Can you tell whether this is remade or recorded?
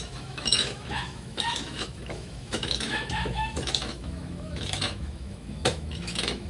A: remade